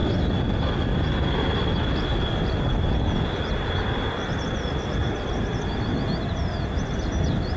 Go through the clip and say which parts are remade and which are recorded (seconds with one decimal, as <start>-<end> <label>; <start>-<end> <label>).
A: 0.0-3.5 recorded; 3.5-5.0 remade; 5.0-6.2 recorded; 6.2-7.6 remade